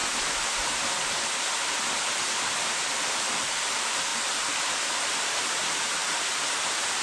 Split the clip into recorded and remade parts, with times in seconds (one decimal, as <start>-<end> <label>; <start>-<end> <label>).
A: 0.0-2.6 recorded; 2.6-4.1 remade; 4.1-4.6 recorded; 4.6-7.0 remade